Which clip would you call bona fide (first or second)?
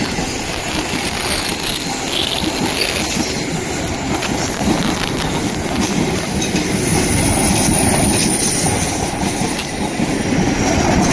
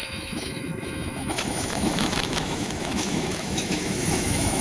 first